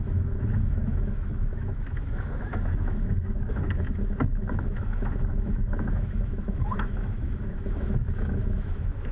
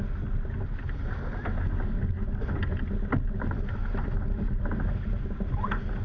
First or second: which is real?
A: second